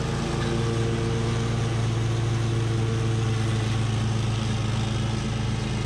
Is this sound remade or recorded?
recorded